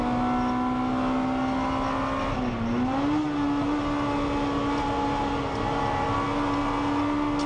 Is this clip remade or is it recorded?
recorded